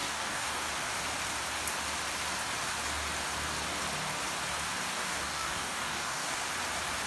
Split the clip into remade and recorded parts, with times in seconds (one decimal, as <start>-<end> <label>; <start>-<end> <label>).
0.0-0.7 remade; 0.7-4.9 recorded; 4.9-6.5 remade; 6.5-7.1 recorded